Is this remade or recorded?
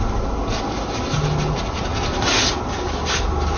recorded